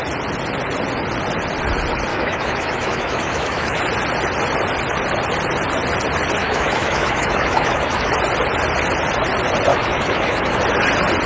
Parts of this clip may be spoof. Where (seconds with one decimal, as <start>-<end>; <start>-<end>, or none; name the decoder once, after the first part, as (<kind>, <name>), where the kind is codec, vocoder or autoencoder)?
2.1-3.8 (autoencoder, DAC-VAE); 6.4-8.1; 9.7-10.6